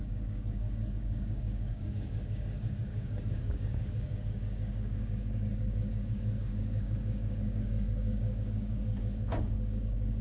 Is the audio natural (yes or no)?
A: no